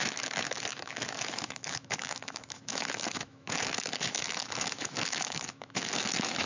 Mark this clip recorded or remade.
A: remade